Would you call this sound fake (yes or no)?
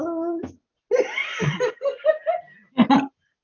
no